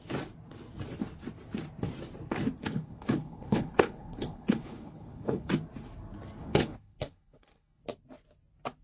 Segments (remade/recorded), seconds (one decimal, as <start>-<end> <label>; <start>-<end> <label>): 0.0-2.6 recorded; 2.6-5.5 remade; 5.5-6.4 recorded; 6.4-7.8 remade; 7.8-8.8 recorded